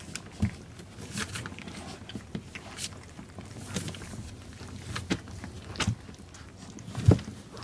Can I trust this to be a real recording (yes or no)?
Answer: yes